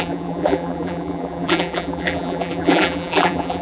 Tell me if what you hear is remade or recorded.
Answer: remade